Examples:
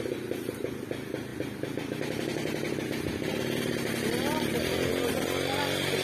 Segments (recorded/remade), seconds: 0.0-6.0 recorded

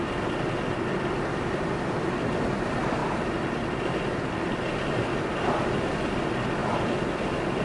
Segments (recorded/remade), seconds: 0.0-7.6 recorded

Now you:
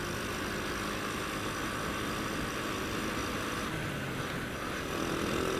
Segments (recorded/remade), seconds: 0.0-3.2 recorded; 3.2-3.8 remade; 3.8-5.6 recorded

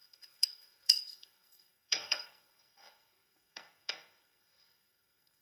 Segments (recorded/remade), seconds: 0.0-5.4 remade

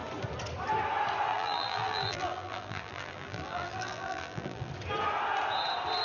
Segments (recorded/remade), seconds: 0.0-1.3 recorded; 1.3-4.7 remade; 4.7-6.0 recorded